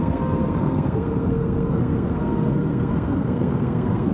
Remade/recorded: remade